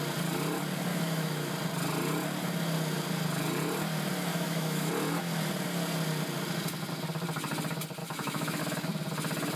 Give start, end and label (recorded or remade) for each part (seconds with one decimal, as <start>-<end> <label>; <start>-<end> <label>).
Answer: 0.0-0.9 recorded; 0.9-1.5 remade; 1.5-4.3 recorded; 4.3-4.9 remade; 4.9-8.0 recorded; 8.0-8.6 remade; 8.6-9.6 recorded